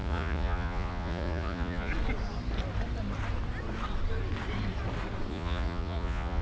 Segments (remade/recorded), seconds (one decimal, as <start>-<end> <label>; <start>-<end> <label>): 0.0-1.9 remade; 1.9-5.3 recorded; 5.3-6.4 remade